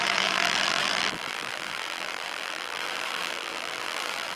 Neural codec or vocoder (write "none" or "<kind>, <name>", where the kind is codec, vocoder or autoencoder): vocoder, BigVGAN v2